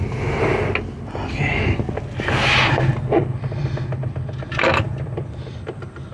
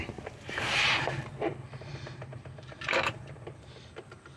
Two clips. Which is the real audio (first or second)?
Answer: first